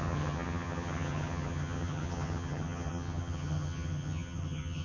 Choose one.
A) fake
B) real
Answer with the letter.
A